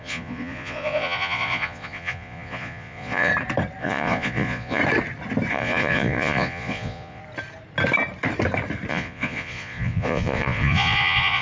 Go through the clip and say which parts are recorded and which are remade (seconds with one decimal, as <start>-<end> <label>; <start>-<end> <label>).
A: 0.0-3.3 remade; 3.3-3.8 recorded; 3.8-4.8 remade; 4.8-5.5 recorded; 5.5-7.2 remade; 7.2-8.9 recorded; 8.9-11.4 remade